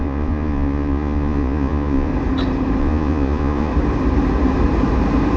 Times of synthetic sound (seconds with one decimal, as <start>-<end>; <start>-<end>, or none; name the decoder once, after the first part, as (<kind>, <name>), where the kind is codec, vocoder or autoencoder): 0.0-2.1 (vocoder, Vocos); 2.8-3.7